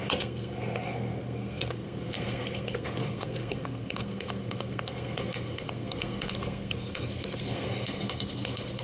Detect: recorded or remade remade